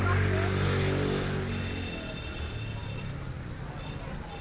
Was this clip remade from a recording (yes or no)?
no